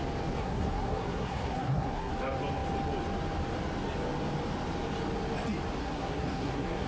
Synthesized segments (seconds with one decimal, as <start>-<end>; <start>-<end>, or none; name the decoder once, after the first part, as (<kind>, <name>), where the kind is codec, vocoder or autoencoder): 0.4-2.1 (codec, SNAC); 5.8-6.9